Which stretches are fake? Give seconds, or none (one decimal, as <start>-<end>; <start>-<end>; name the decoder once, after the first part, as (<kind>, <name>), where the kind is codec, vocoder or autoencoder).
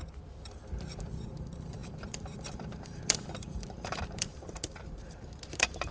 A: 1.3-5.9 (vocoder, BigVGAN v2)